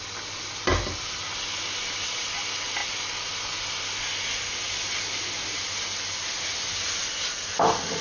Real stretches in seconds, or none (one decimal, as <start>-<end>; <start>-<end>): 0.0-8.0